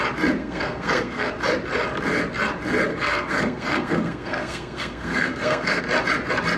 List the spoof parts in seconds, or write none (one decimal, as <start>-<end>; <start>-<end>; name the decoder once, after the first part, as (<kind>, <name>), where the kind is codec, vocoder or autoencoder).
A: 0.4-1.3 (codec, SNAC); 2.9-5.8